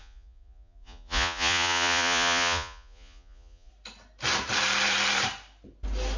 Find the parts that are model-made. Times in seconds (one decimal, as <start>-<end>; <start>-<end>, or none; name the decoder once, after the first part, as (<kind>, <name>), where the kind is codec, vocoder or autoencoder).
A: 0.0-3.7 (vocoder, Vocos)